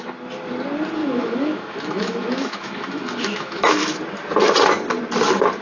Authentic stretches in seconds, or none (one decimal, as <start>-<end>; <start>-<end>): 0.0-1.0; 4.0-5.6